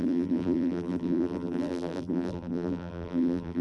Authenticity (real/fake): fake